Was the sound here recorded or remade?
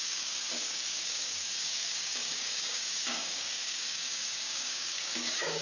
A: remade